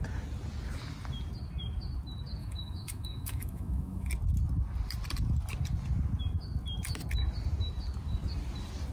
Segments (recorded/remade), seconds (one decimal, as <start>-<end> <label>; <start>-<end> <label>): 0.0-2.4 recorded; 2.4-4.1 remade; 4.1-8.9 recorded